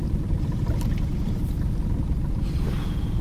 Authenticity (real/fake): real